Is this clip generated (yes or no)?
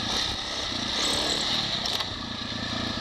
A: no